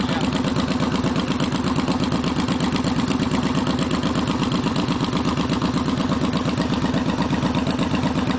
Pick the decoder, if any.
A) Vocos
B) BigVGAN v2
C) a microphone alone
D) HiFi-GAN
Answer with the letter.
C